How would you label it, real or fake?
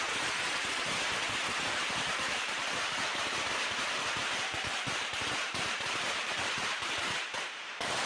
fake